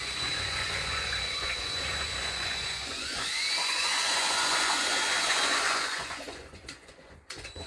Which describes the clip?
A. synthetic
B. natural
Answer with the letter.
A